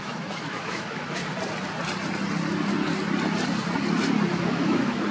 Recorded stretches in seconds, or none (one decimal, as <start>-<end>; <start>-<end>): 1.2-4.3